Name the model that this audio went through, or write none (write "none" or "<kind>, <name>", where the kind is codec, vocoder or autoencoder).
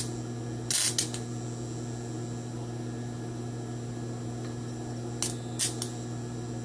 none